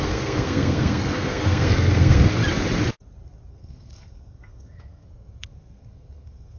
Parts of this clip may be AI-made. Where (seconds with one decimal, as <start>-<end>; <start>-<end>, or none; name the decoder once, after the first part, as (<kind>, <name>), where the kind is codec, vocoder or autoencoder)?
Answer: 0.0-2.4 (codec, SNAC); 3.5-6.6